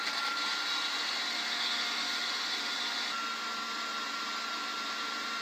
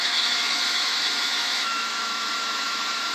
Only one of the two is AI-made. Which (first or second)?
second